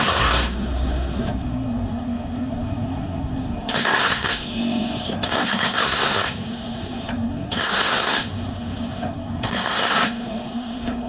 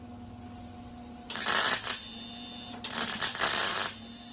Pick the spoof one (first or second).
first